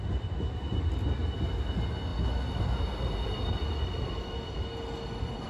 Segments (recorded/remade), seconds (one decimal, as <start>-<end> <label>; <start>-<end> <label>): 0.0-5.5 recorded